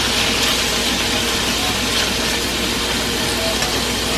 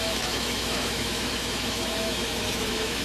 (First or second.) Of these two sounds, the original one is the first